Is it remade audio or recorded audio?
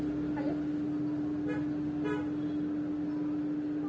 recorded